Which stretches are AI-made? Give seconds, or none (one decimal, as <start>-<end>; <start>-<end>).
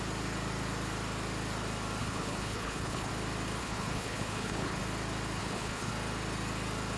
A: 2.0-3.1; 3.6-4.8; 5.4-5.9